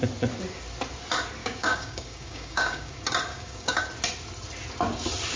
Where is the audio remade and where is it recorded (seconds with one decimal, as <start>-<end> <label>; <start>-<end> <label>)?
0.0-1.4 recorded; 1.4-2.9 remade; 2.9-3.3 recorded; 3.3-3.8 remade; 3.8-5.4 recorded